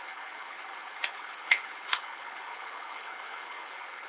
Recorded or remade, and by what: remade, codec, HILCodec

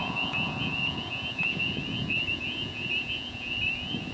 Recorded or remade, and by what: remade, vocoder, Vocos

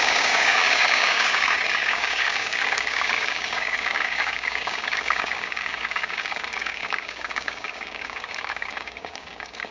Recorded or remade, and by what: remade, codec, DAC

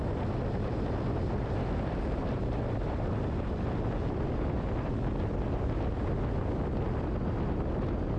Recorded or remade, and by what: recorded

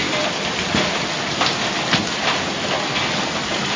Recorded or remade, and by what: recorded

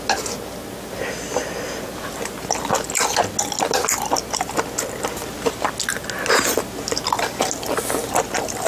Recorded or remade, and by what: recorded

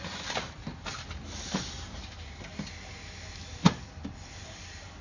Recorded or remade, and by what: recorded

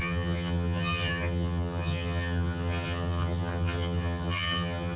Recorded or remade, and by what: remade, vocoder, HiFi-GAN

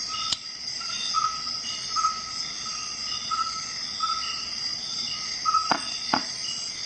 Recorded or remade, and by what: remade, vocoder, Vocos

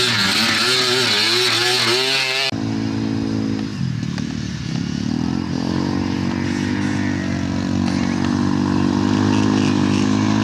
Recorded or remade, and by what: recorded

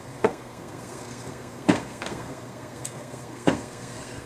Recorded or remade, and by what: remade, codec, SNAC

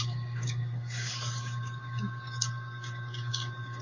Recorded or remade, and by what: remade, codec, DAC